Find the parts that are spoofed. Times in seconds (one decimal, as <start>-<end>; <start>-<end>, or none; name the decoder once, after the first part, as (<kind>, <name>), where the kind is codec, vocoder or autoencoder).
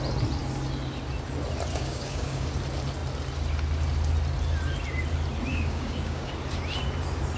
1.7-2.5 (codec, DAC); 5.5-6.3